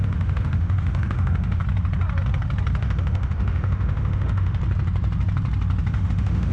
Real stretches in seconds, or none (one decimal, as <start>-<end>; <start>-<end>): 1.6-2.8; 4.6-5.9